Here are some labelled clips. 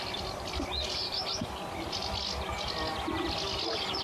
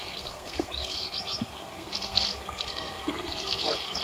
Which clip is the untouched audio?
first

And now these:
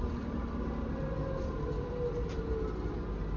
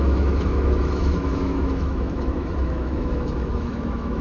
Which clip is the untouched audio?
first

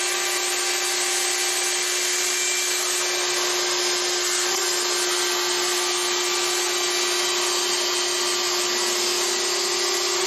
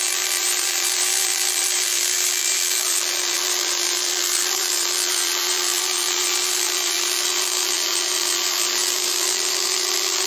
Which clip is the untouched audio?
first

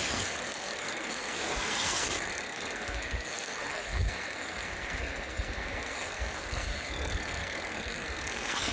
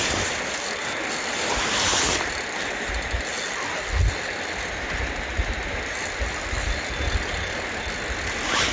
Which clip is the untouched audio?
second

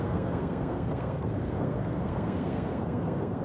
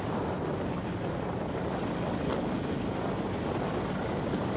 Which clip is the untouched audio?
second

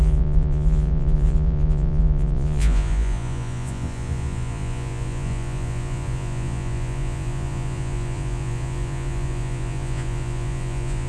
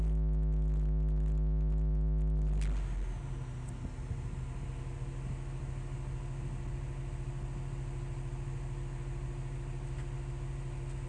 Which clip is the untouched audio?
second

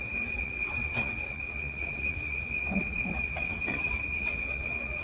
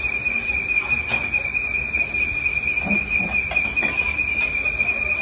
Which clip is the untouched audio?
second